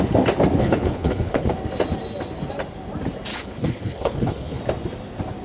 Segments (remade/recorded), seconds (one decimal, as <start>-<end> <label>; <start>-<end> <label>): 0.0-0.6 recorded; 0.6-1.5 remade; 1.5-3.3 recorded; 3.3-4.6 remade; 4.6-5.4 recorded